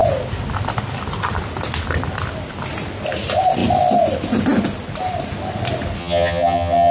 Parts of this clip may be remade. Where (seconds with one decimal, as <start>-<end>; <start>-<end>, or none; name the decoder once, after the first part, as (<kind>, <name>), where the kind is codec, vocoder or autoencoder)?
6.0-6.9 (vocoder, HiFi-GAN)